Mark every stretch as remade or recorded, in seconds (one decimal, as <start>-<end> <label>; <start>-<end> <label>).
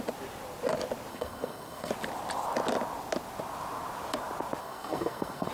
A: 0.0-1.1 recorded; 1.1-1.9 remade; 1.9-4.6 recorded; 4.6-5.5 remade